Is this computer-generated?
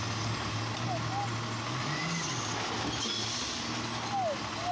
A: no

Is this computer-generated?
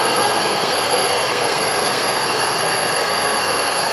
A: yes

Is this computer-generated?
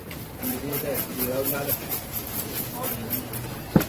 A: no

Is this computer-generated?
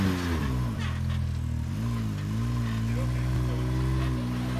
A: no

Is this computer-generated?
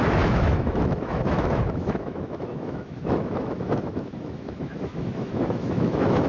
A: yes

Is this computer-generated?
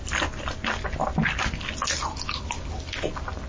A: no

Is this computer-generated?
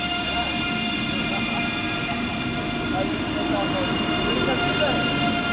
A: no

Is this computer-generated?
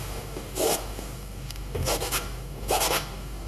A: yes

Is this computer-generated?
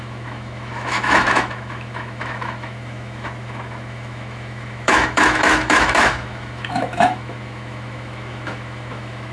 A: yes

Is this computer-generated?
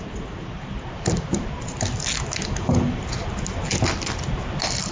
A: no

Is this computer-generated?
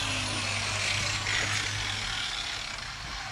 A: no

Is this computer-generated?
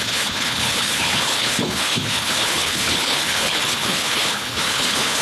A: yes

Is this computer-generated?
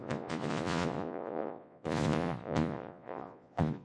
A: yes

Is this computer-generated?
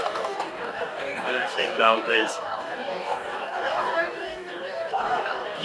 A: yes